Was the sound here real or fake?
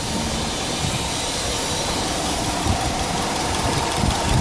fake